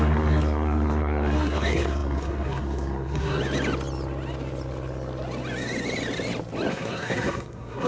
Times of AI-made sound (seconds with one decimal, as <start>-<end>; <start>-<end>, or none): 0.0-3.4; 6.7-7.9